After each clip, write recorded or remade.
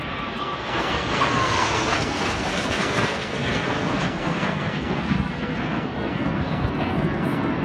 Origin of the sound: remade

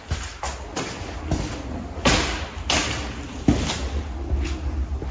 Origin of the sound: recorded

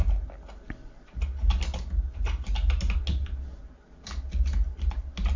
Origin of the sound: recorded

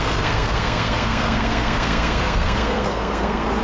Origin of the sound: remade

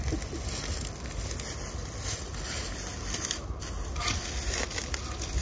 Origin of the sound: recorded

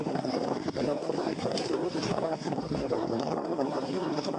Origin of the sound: remade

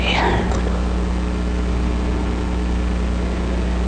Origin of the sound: recorded